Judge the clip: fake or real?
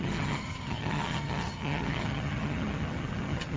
fake